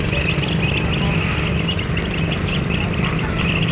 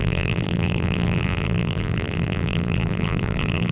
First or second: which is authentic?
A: first